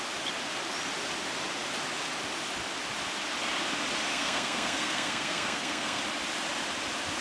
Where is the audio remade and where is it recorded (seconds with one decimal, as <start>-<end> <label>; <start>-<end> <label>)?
0.0-4.1 recorded; 4.1-6.0 remade; 6.0-7.2 recorded